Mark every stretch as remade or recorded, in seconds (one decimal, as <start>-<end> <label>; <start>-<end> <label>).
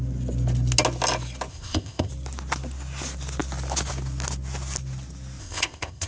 0.0-1.5 recorded; 1.5-2.1 remade; 2.1-5.4 recorded; 5.4-6.1 remade